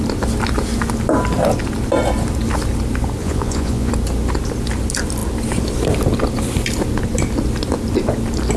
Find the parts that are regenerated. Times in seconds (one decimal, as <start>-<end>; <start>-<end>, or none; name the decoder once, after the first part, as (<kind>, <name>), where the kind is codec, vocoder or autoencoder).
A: 3.2-3.9 (vocoder, Vocos)